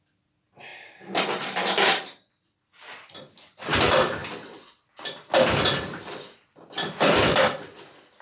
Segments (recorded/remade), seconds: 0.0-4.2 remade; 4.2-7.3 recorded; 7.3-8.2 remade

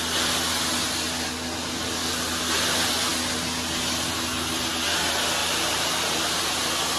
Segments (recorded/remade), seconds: 0.0-5.4 recorded; 5.4-6.4 remade; 6.4-7.0 recorded